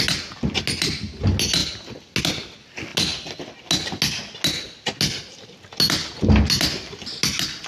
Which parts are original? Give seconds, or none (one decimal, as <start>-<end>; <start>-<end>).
0.0-7.7